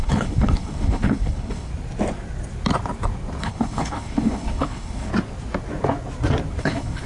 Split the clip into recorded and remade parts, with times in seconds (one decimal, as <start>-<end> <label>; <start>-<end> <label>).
0.0-1.7 remade; 1.7-3.4 recorded; 3.4-5.1 remade; 5.1-6.6 recorded; 6.6-7.1 remade